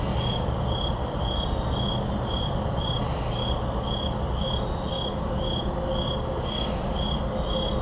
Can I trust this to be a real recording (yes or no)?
yes